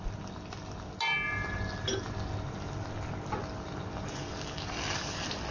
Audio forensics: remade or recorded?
recorded